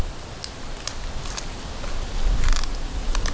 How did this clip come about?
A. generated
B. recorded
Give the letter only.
B